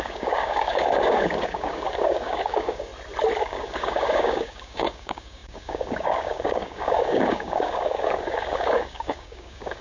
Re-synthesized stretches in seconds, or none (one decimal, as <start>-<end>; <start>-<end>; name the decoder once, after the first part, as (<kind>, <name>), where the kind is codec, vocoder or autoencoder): 0.0-2.9 (codec, DAC); 3.4-9.8

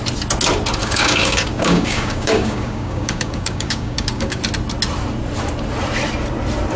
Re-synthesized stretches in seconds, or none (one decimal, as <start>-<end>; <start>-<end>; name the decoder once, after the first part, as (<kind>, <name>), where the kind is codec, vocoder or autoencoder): 0.8-4.4 (codec, DAC)